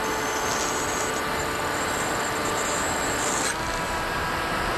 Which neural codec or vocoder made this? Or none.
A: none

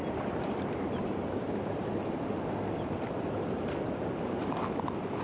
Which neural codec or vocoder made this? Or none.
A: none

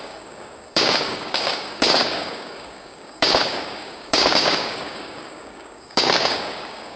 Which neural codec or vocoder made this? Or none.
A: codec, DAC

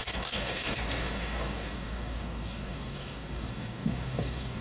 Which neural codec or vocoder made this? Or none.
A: codec, DAC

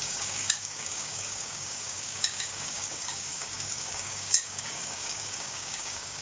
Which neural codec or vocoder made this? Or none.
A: codec, DAC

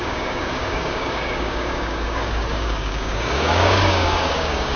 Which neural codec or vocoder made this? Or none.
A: codec, DAC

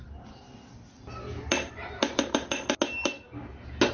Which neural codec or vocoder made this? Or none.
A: none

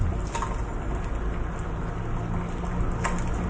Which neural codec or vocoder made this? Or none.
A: none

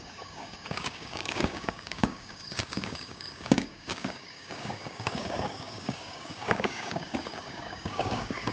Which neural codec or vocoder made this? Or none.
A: codec, DAC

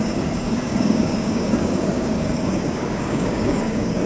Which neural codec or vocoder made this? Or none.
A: codec, DAC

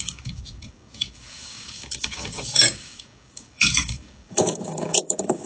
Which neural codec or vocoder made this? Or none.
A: codec, DAC